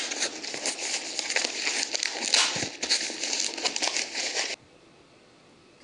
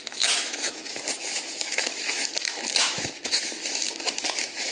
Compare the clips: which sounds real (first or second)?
first